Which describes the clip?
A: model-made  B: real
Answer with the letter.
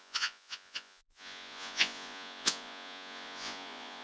A